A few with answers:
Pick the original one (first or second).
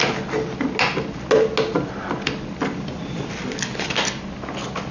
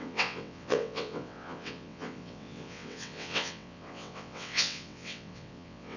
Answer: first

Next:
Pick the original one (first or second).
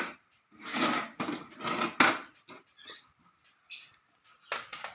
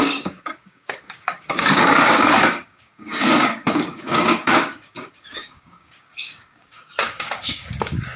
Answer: first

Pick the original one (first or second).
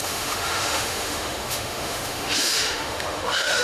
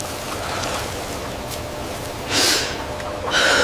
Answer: second